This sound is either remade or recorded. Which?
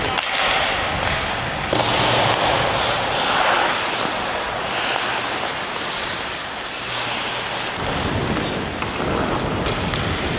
recorded